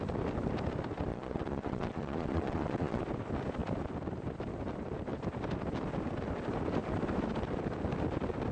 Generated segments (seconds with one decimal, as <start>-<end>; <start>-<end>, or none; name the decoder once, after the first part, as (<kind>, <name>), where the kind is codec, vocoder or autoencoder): 1.1-3.0 (vocoder, Vocos)

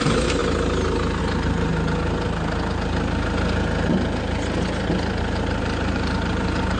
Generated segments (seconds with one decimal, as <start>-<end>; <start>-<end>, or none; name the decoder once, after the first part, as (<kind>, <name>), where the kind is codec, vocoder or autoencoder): 0.0-0.4 (vocoder, BigVGAN v2); 1.2-1.7; 5.2-6.8

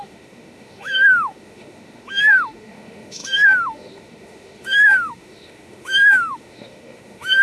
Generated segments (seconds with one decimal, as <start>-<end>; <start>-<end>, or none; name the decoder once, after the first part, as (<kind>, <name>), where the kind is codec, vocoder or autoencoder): 0.0-7.4 (autoencoder, DAC-VAE)

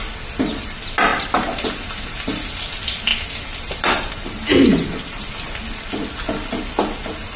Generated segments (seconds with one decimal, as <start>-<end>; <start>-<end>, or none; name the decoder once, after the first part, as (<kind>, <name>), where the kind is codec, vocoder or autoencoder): none

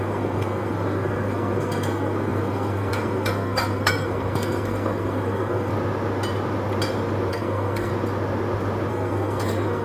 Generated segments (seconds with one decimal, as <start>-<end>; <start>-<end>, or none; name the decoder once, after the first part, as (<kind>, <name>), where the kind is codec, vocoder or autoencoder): 0.0-5.7 (codec, SNAC); 7.3-7.9; 8.9-9.8